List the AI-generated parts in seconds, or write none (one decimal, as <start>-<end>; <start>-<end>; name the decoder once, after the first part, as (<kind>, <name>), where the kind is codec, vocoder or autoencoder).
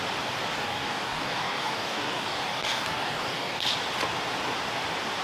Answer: 0.5-3.6 (codec, DAC)